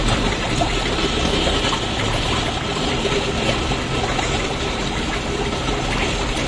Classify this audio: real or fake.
real